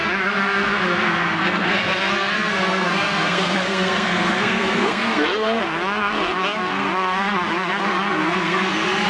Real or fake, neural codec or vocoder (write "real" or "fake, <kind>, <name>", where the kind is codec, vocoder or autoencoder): fake, codec, SNAC